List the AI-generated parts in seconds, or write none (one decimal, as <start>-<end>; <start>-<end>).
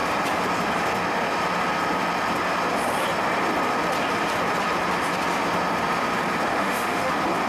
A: 6.5-7.1